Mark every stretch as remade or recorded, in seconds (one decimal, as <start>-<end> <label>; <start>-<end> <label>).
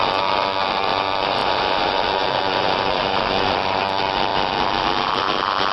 0.0-5.7 remade